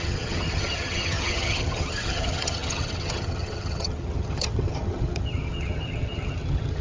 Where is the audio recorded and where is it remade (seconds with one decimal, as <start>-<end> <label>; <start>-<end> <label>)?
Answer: 0.0-6.8 remade